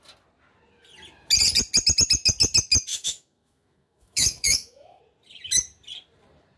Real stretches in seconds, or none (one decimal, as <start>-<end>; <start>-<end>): 0.0-2.9; 5.0-6.6